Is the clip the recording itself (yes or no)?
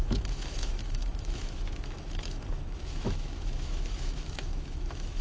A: no